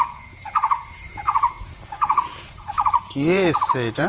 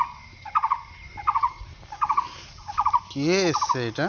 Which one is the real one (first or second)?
second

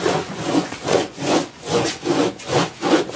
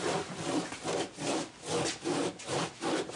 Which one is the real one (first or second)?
second